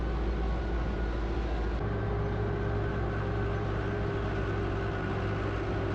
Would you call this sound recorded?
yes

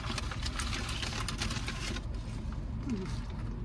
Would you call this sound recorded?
yes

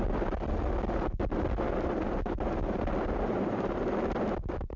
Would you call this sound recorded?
yes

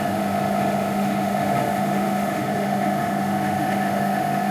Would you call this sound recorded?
no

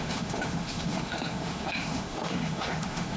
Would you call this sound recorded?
no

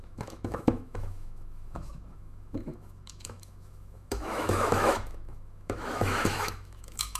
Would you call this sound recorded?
no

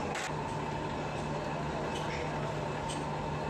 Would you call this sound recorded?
yes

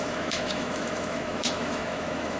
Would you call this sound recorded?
no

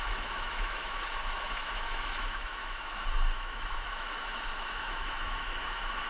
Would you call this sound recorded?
no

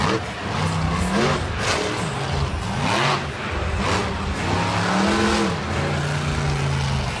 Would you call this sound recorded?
yes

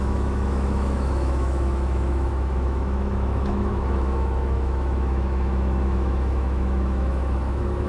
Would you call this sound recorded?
no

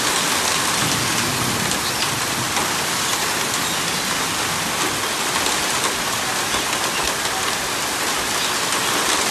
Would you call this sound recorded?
yes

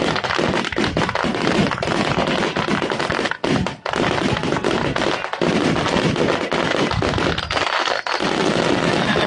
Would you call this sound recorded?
yes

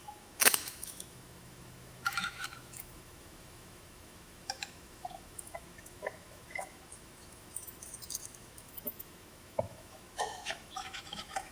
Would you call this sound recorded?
no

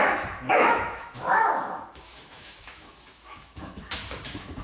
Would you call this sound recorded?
no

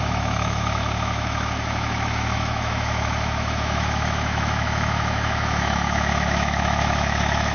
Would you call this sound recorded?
no